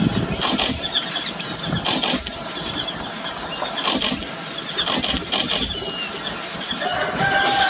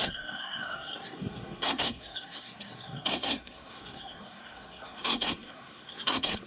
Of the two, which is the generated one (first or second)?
second